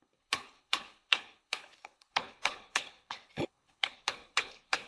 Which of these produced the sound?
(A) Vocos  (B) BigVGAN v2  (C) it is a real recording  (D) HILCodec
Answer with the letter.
D